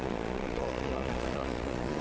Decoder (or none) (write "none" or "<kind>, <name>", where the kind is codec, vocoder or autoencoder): vocoder, Vocos